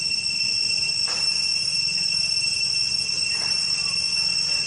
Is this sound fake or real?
real